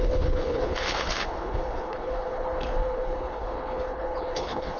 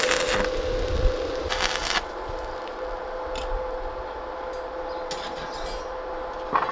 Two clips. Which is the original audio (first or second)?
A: second